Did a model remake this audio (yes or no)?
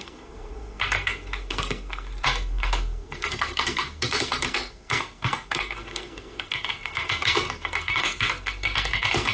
yes